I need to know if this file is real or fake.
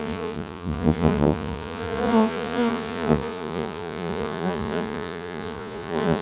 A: fake